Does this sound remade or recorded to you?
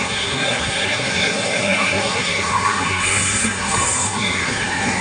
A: remade